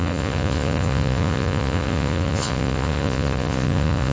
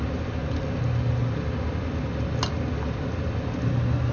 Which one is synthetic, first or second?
first